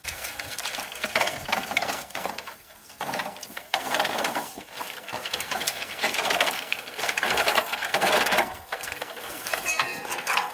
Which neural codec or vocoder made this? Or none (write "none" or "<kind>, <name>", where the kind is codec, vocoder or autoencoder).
codec, SNAC